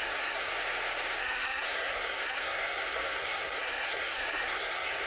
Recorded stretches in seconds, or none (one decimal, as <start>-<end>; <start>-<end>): 0.5-1.2